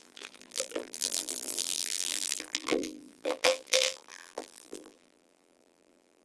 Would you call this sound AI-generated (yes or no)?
yes